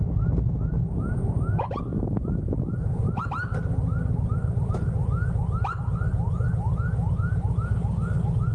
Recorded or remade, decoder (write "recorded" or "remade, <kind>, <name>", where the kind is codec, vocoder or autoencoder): recorded